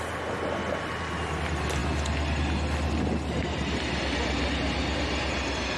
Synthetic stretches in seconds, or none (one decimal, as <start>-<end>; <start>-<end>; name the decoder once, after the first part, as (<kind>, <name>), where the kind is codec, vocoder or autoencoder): none